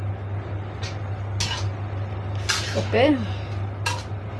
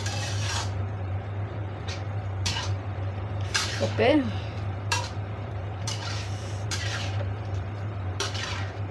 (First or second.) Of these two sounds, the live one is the first